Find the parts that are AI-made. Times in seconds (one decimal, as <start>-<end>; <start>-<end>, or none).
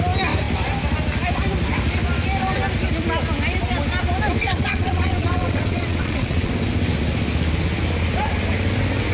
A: 4.4-6.5